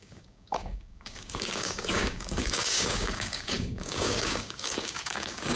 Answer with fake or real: fake